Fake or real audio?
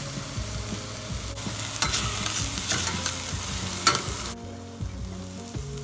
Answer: real